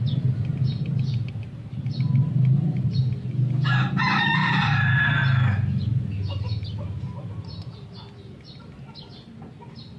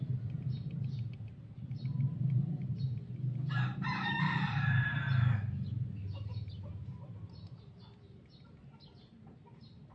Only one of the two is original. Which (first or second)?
first